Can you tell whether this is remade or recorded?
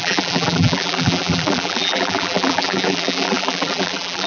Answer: remade